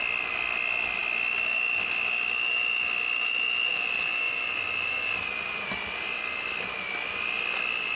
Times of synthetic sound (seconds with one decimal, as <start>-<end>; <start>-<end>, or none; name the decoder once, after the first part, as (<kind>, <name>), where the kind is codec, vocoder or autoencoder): none